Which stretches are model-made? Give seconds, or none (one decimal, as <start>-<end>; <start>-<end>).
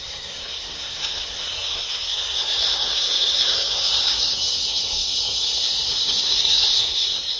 0.0-7.4